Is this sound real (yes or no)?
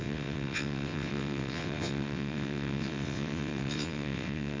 no